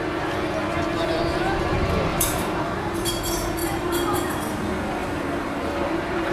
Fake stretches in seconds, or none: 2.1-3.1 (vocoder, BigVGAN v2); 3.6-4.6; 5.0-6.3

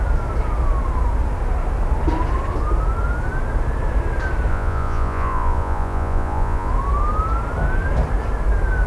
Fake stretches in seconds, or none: 4.5-6.7 (vocoder, Vocos)

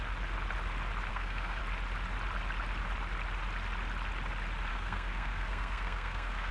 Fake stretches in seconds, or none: 1.1-1.6 (codec, SNAC); 4.7-6.5